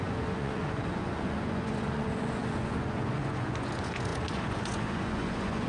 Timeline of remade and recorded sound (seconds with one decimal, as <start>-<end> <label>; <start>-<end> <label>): 0.0-5.7 remade